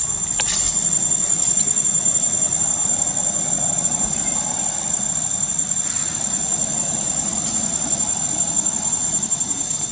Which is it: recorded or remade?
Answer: recorded